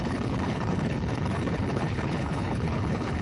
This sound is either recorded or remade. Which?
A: remade